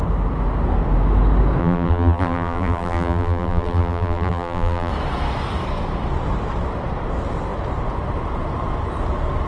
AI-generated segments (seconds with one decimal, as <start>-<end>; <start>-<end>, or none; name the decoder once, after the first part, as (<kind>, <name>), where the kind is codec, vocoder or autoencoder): 1.6-4.9 (vocoder, BigVGAN v2)